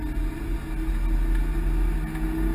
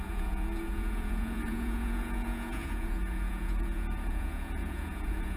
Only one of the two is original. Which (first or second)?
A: first